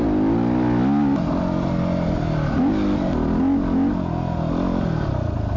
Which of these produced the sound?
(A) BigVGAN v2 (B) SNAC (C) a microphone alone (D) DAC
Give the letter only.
C